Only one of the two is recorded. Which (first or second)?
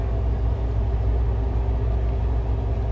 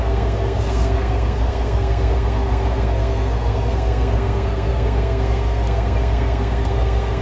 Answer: first